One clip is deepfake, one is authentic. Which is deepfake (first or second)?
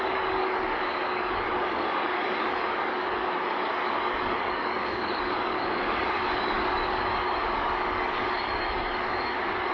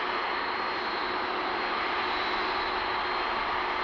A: first